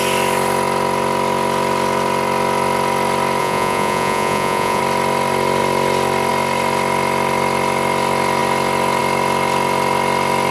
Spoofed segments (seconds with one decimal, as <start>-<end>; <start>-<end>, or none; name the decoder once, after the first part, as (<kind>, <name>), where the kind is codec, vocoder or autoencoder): 3.4-4.8 (vocoder, Vocos)